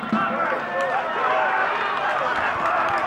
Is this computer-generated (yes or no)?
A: no